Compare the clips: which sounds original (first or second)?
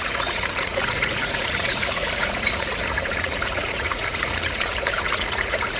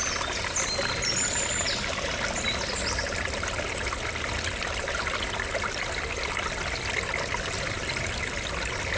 second